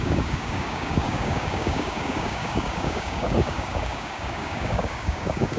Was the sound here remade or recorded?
remade